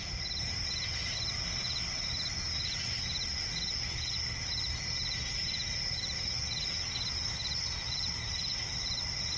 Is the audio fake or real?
real